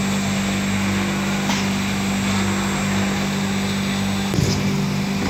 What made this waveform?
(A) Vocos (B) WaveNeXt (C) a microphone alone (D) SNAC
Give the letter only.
C